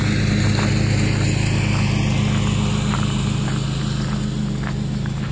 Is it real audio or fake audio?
real